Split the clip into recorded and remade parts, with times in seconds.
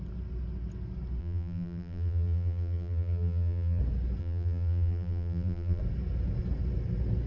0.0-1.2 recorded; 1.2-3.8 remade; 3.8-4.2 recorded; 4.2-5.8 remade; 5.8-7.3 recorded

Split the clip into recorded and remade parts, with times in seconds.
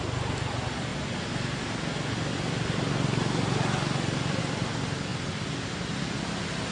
0.0-6.7 recorded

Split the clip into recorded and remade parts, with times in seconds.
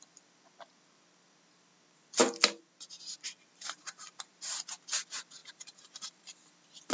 0.0-5.4 recorded; 5.4-6.1 remade; 6.1-6.9 recorded